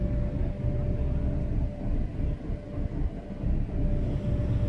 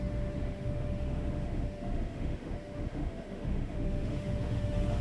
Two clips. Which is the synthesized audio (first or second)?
second